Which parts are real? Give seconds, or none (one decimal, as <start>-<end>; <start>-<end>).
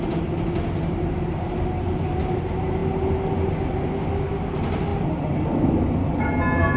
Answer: 0.0-6.8